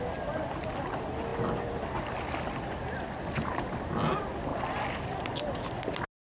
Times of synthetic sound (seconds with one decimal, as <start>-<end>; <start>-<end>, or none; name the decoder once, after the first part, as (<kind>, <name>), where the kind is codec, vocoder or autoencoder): none